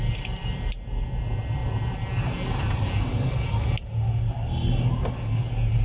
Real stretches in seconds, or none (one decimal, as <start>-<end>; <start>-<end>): 0.0-5.8